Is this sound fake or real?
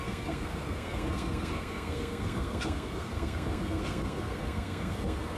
fake